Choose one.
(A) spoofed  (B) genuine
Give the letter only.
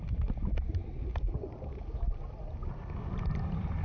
B